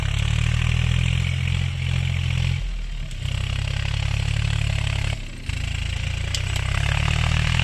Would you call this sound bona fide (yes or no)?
yes